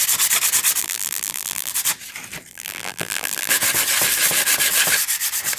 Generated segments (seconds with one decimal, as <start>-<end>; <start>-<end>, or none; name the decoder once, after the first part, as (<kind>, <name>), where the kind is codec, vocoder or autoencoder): 0.8-1.7 (vocoder, BigVGAN v2); 2.5-3.5